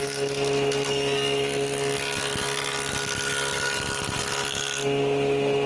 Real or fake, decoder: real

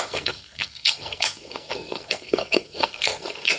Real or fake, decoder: fake, codec, SNAC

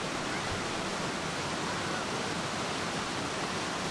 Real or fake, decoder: real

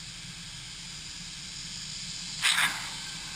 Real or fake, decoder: real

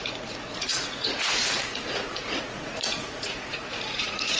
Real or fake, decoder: fake, vocoder, Vocos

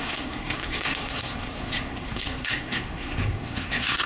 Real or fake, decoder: fake, codec, SNAC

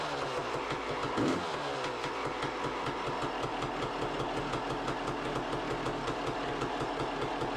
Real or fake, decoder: real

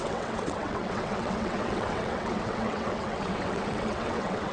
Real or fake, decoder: fake, vocoder, WaveNeXt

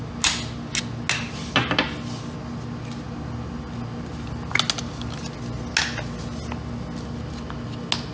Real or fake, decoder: real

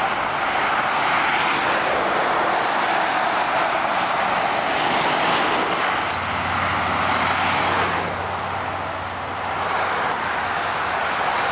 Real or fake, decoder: real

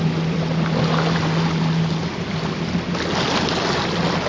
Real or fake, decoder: real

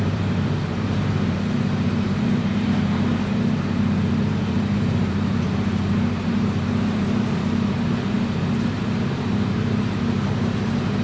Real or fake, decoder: fake, vocoder, BigVGAN v2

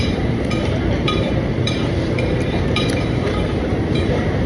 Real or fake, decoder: fake, vocoder, BigVGAN v2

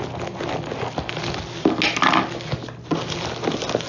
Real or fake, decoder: real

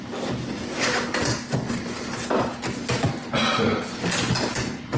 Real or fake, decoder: real